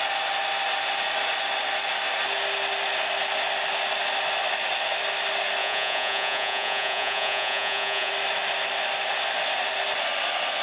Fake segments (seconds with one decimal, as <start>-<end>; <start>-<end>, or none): 5.6-8.1